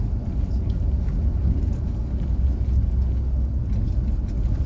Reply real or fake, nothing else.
real